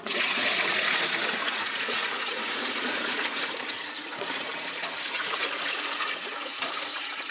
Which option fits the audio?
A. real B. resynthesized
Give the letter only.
B